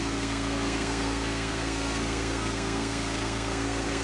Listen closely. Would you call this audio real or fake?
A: fake